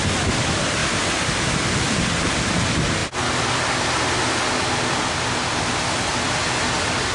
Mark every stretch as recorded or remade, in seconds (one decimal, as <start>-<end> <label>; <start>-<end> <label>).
0.0-7.1 recorded